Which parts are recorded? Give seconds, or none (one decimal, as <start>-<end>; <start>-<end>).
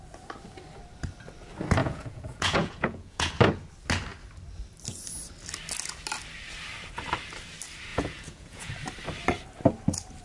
0.0-1.8; 3.3-7.9; 8.7-10.2